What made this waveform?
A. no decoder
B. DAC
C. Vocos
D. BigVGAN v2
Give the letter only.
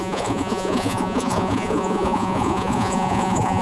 C